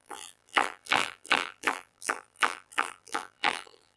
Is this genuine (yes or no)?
no